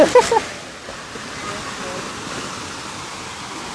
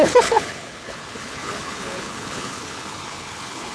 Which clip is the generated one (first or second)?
second